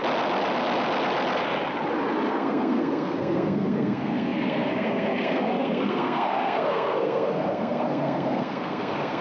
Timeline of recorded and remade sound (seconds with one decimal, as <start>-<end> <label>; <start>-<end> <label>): 0.0-2.3 recorded; 2.3-9.2 remade